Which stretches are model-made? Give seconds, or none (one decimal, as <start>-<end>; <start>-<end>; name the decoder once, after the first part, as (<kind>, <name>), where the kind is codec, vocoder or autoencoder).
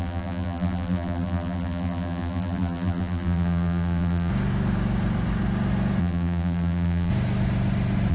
0.0-4.3 (vocoder, BigVGAN v2); 6.0-7.1